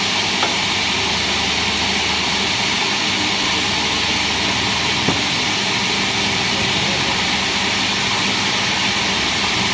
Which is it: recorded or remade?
recorded